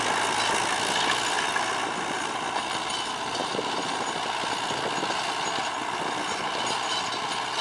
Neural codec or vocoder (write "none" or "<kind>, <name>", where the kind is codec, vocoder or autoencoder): none